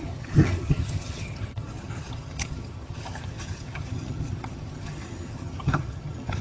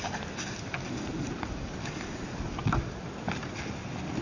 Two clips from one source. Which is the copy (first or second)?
first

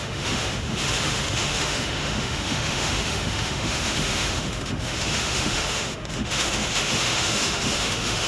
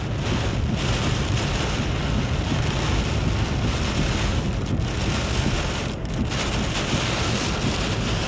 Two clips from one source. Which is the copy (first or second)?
first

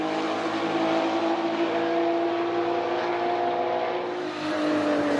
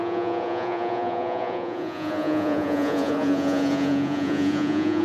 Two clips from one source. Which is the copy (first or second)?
second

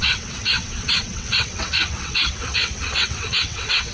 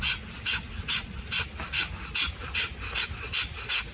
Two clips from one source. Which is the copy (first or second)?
first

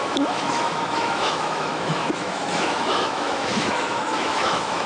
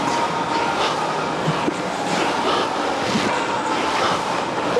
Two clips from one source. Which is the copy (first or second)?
first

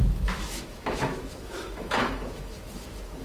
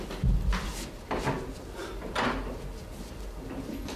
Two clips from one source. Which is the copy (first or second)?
first